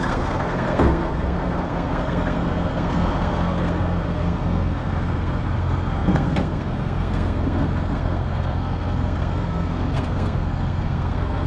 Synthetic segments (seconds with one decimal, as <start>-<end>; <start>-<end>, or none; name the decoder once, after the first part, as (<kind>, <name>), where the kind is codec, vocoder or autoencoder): 0.0-11.5 (codec, SNAC)